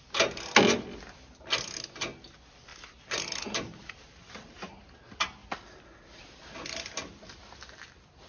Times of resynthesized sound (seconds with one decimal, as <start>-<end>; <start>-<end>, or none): 2.7-4.6; 5.4-6.9